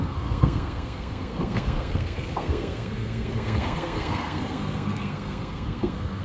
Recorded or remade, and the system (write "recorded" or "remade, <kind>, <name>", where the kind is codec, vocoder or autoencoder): remade, codec, SNAC